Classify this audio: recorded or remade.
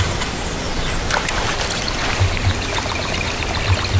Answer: recorded